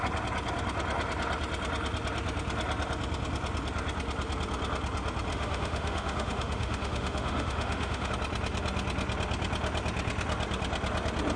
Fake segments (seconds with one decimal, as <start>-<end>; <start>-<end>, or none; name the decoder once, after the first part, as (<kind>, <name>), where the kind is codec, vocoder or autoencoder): 5.3-8.1 (autoencoder, DAC-VAE)